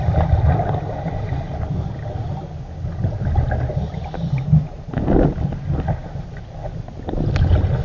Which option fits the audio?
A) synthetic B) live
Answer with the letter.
B